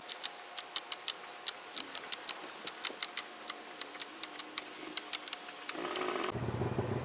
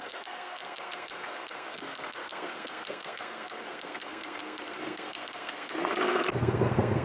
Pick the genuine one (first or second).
first